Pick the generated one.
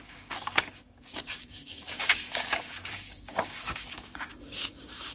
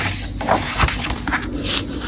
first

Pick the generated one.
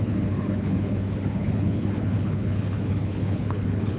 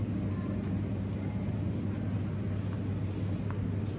first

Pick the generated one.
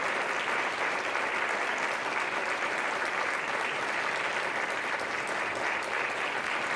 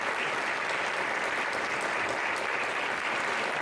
second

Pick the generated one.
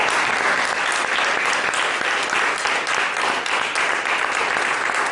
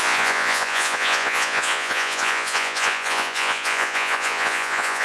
second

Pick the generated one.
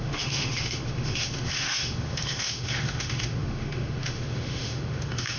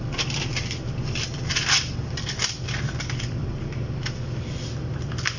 first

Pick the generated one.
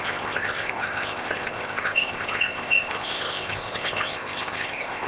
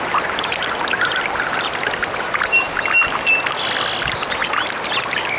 first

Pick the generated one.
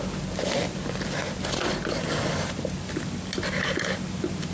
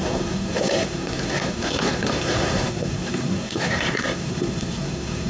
second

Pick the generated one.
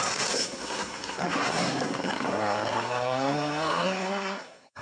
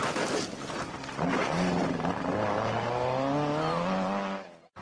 first